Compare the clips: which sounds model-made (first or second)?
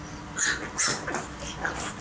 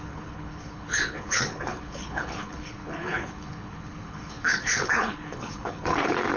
second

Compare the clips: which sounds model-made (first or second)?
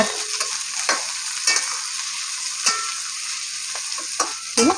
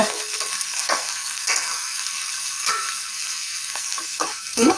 second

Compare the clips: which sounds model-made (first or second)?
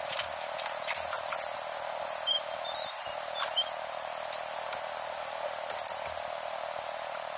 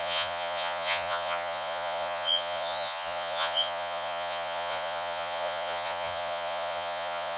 second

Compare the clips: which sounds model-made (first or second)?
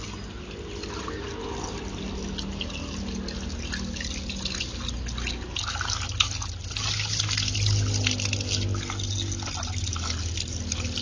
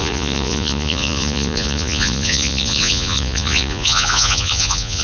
second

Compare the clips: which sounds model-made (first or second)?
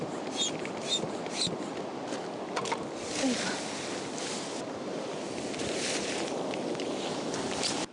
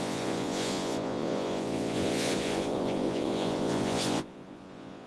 second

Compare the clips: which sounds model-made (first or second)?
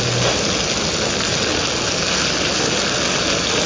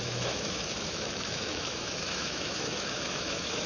second